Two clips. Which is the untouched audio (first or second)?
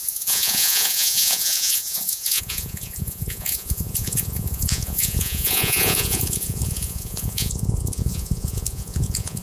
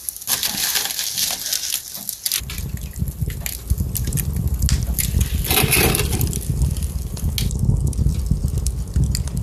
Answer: second